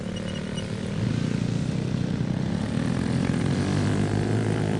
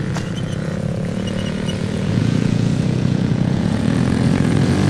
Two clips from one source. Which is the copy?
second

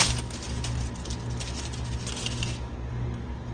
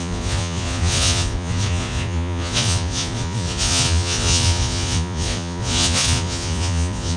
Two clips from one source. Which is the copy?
second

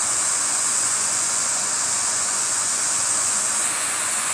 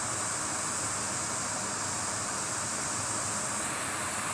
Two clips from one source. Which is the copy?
first